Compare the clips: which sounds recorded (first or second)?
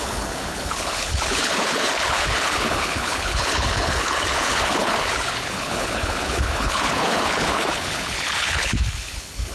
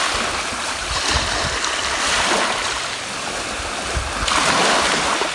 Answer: second